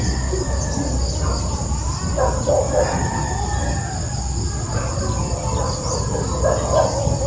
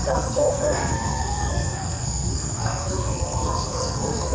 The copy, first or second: second